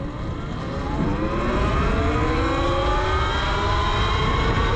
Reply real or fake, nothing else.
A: real